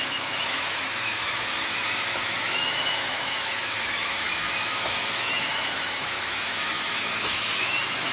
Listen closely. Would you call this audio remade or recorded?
remade